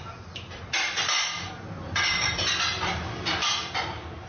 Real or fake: real